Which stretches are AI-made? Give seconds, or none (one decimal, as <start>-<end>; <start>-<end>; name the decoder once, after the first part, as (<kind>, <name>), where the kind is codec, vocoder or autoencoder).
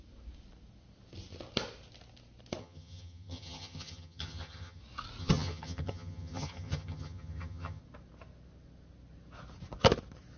2.6-4.8 (vocoder, HiFi-GAN); 5.2-7.8